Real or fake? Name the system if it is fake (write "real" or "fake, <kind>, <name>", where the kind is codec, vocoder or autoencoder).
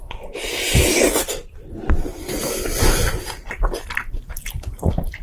real